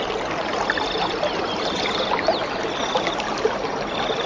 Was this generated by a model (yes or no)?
no